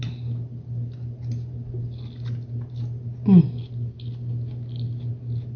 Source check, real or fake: real